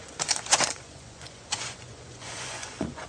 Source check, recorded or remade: remade